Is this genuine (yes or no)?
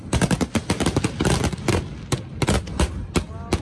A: yes